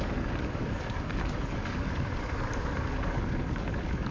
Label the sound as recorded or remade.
remade